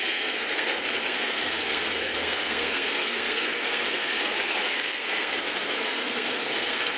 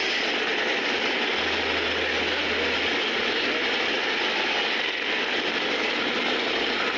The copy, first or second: first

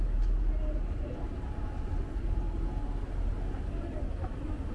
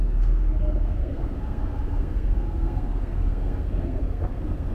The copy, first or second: second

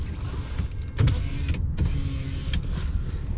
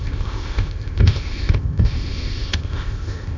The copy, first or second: second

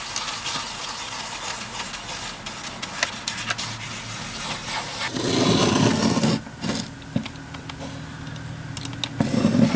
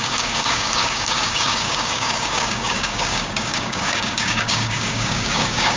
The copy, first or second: second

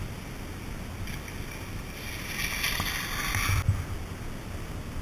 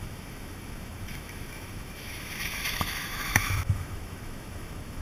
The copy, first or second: second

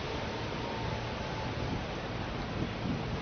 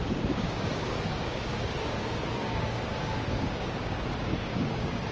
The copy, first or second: second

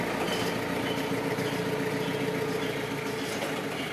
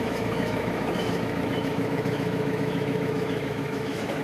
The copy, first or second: second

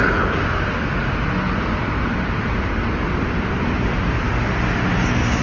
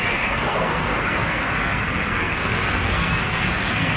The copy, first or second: second